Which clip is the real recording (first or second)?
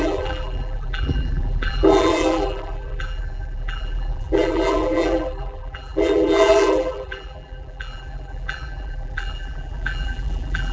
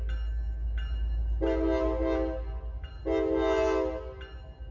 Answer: second